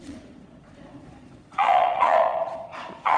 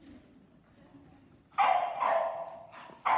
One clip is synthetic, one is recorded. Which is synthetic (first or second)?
first